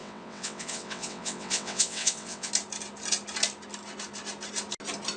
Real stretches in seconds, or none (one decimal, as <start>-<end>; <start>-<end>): 2.5-5.2